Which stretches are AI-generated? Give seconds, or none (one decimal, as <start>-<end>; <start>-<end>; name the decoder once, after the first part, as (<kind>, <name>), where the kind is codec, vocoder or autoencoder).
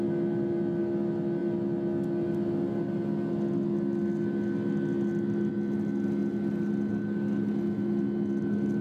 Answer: none